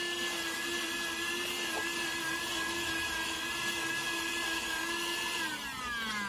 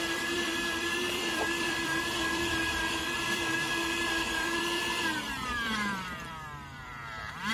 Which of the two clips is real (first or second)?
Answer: first